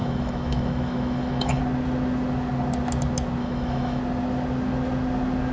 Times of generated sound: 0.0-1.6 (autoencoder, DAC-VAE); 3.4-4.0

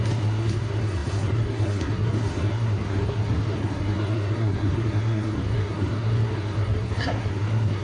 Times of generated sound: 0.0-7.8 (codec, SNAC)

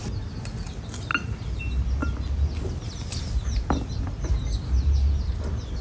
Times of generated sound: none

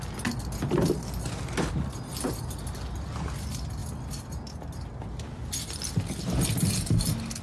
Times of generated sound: none

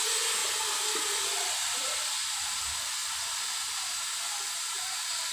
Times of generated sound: 0.4-2.5 (vocoder, BigVGAN v2)